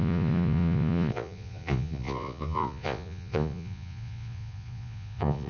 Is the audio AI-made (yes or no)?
yes